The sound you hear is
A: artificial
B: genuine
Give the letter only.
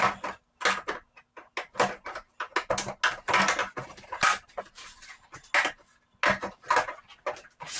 B